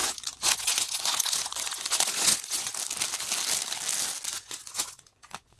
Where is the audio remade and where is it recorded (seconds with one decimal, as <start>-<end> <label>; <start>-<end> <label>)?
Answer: 0.0-2.7 remade; 2.7-4.3 recorded; 4.3-5.6 remade

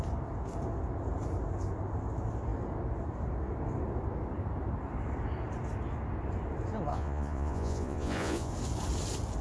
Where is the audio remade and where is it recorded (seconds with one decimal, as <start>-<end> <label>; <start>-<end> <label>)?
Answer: 0.0-6.9 recorded; 6.9-8.5 remade; 8.5-9.4 recorded

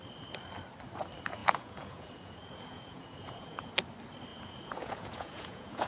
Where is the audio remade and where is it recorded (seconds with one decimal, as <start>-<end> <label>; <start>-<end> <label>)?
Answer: 0.0-1.4 recorded; 1.4-3.7 remade; 3.7-4.3 recorded; 4.3-5.9 remade